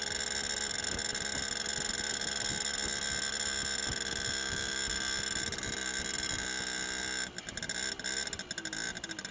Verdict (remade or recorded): recorded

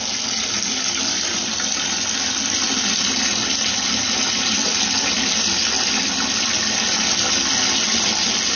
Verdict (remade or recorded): recorded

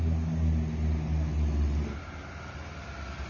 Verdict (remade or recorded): recorded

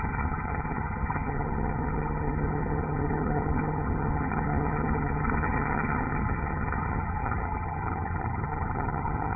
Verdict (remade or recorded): remade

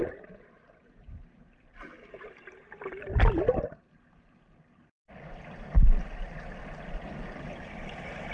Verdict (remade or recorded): recorded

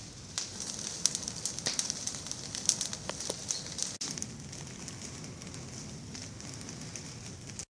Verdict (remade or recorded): recorded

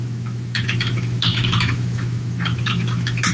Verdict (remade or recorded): remade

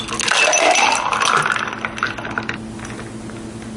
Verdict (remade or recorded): recorded